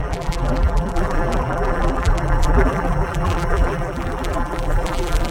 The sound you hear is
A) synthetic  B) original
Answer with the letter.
A